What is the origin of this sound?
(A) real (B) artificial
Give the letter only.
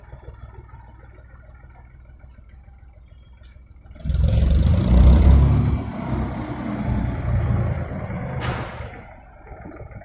B